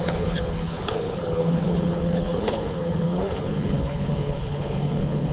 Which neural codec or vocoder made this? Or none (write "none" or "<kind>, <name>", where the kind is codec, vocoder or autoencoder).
codec, HILCodec